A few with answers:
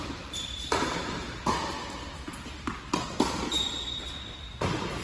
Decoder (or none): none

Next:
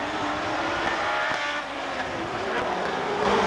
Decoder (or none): vocoder, BigVGAN v2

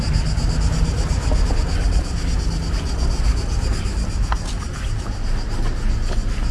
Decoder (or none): none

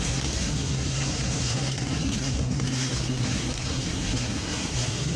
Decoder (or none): codec, SNAC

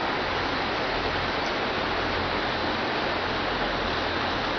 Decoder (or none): none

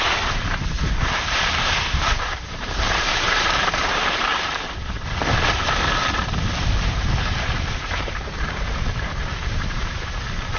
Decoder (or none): vocoder, BigVGAN v2